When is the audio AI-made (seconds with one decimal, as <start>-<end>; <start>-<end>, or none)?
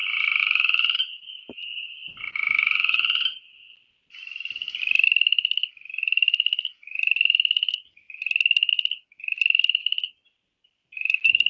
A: 0.0-3.4